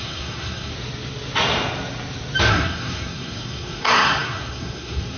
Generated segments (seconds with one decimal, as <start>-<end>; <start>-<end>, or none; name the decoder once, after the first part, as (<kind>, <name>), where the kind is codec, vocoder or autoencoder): 0.0-0.7 (codec, SNAC); 2.5-5.2